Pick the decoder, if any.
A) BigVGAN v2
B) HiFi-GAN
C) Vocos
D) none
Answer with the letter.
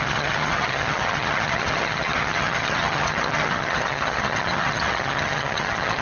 B